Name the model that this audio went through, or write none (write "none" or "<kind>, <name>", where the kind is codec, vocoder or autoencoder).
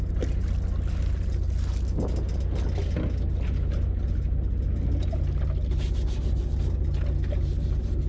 none